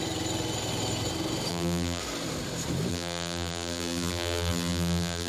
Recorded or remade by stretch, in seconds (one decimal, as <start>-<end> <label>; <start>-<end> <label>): 0.0-1.5 recorded; 1.5-2.0 remade; 2.0-2.9 recorded; 2.9-5.3 remade

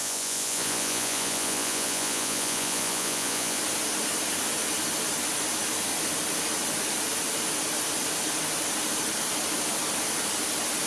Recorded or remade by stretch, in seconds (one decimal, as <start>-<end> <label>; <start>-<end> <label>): 0.0-3.6 remade; 3.6-10.9 recorded

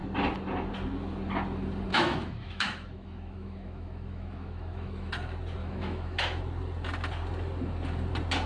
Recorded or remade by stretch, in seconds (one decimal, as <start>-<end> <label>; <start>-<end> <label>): 0.0-1.9 recorded; 1.9-5.1 remade; 5.1-5.6 recorded; 5.6-6.4 remade; 6.4-8.5 recorded

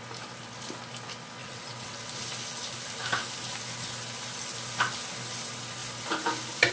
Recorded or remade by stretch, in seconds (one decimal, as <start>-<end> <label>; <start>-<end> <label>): 0.0-1.4 recorded; 1.4-2.0 remade; 2.0-6.7 recorded

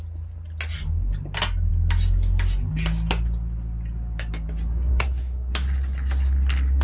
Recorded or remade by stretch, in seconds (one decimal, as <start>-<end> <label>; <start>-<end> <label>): 0.0-4.9 recorded; 4.9-5.5 remade; 5.5-6.8 recorded

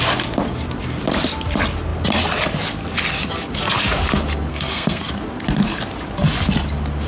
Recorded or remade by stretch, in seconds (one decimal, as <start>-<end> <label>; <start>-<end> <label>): 0.0-4.5 recorded; 4.5-5.1 remade; 5.1-7.1 recorded

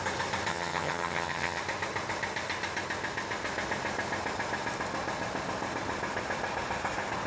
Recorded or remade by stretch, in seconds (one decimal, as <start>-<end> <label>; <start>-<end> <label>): 0.0-0.5 recorded; 0.5-1.6 remade; 1.6-7.3 recorded